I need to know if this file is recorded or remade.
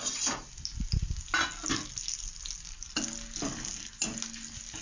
recorded